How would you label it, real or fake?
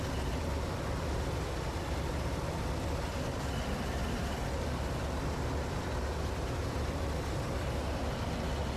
fake